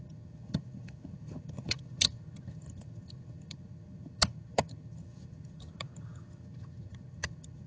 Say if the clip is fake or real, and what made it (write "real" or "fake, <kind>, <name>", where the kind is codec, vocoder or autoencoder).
fake, vocoder, HiFi-GAN